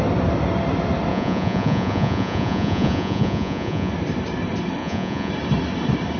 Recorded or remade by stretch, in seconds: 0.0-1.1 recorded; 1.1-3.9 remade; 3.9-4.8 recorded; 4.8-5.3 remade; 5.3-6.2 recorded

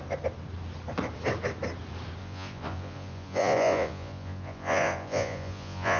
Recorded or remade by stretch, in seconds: 0.0-2.2 recorded; 2.2-6.0 remade

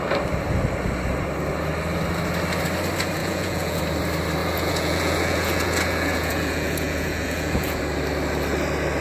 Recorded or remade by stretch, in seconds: 0.0-3.2 recorded; 3.2-3.8 remade; 3.8-4.4 recorded; 4.4-7.8 remade; 7.8-9.0 recorded